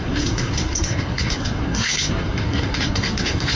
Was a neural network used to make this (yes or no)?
yes